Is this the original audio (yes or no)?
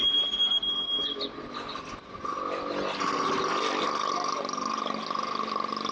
yes